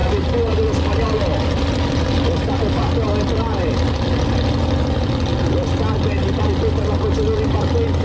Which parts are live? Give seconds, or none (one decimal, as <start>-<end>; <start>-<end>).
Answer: 0.0-8.0